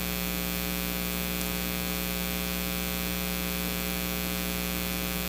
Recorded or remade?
recorded